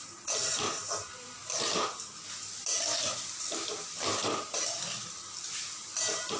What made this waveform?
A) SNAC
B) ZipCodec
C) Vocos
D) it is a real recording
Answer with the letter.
D